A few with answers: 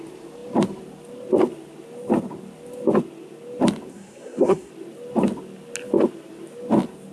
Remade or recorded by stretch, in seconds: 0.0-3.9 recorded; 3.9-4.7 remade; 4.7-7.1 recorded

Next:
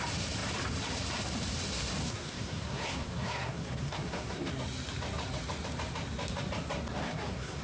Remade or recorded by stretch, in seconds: 0.0-2.0 recorded; 2.0-4.5 remade; 4.5-7.0 recorded; 7.0-7.6 remade

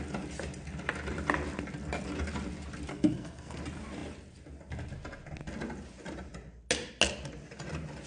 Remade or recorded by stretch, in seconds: 0.0-2.9 recorded; 2.9-3.6 remade; 3.6-8.1 recorded

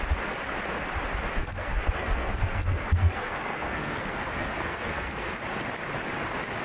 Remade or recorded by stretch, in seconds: 0.0-1.4 recorded; 1.4-5.4 remade; 5.4-6.6 recorded

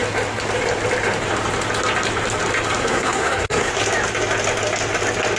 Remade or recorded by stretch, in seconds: 0.0-2.8 recorded; 2.8-3.7 remade; 3.7-5.4 recorded

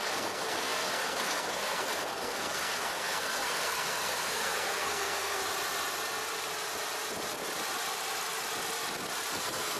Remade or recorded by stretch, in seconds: 0.0-5.4 remade; 5.4-9.3 recorded; 9.3-9.8 remade

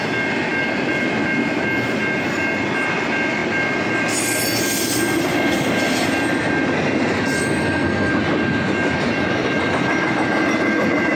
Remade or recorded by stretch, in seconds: 0.0-7.6 recorded; 7.6-8.1 remade; 8.1-11.2 recorded